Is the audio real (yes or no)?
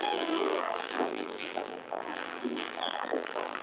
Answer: no